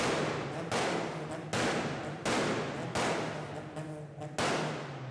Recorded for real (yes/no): yes